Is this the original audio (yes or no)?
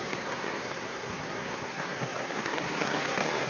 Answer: no